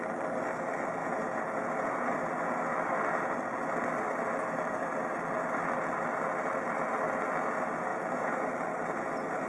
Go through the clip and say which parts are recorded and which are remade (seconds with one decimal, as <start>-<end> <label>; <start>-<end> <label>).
0.0-1.0 recorded; 1.0-2.1 remade; 2.1-7.9 recorded; 7.9-8.5 remade; 8.5-9.5 recorded